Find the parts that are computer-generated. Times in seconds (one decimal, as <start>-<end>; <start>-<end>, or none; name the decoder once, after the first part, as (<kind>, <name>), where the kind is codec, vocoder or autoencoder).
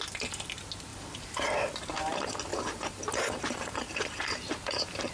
0.9-1.7 (vocoder, BigVGAN v2); 2.5-5.1